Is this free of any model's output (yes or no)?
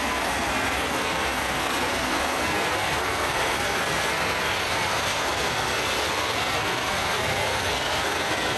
no